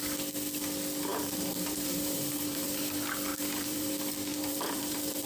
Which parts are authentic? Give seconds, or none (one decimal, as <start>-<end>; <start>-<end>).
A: 0.0-1.1; 2.8-3.3; 3.9-4.3